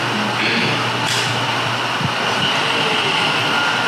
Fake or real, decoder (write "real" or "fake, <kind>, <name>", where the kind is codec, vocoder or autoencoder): real